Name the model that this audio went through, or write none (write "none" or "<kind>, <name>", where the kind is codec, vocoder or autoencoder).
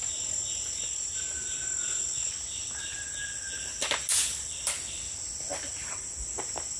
none